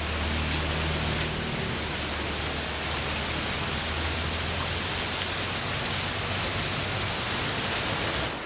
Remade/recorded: recorded